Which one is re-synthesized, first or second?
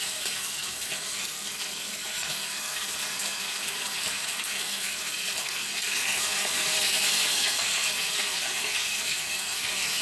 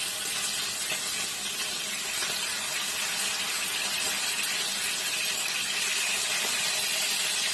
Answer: first